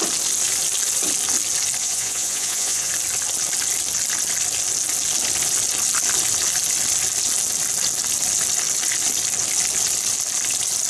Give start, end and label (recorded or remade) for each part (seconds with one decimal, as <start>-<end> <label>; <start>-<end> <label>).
0.0-1.8 recorded; 1.8-2.9 remade; 2.9-10.9 recorded